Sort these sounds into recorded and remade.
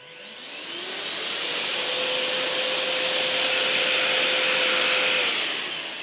recorded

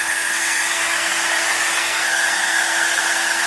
remade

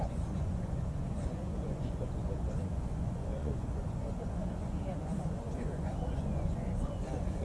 remade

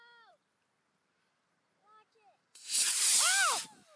recorded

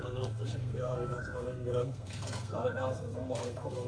remade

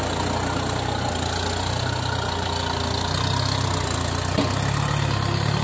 recorded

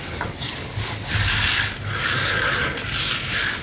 remade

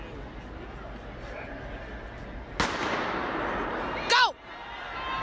recorded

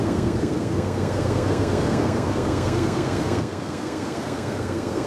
remade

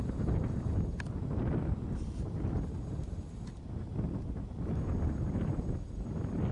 recorded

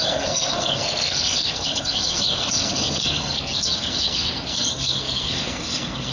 remade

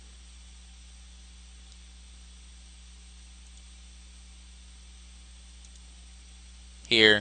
recorded